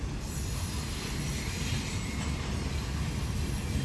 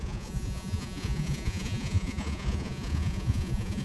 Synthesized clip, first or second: second